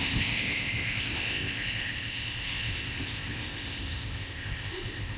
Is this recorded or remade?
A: remade